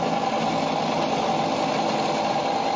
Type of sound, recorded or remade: recorded